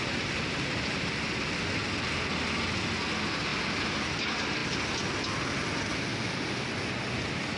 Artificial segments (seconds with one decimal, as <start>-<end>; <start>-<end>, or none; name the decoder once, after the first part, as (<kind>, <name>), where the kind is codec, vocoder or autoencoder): none